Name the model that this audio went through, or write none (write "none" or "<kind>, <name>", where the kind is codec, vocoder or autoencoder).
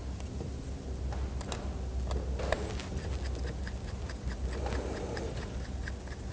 none